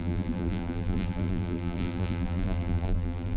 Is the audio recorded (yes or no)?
no